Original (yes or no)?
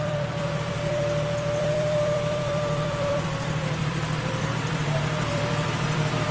no